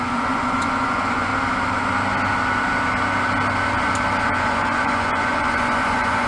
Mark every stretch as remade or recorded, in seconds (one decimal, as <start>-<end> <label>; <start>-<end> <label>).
0.0-1.3 remade; 1.3-4.2 recorded; 4.2-6.3 remade